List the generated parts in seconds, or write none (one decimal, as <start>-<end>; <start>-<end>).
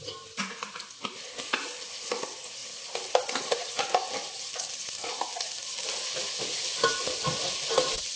none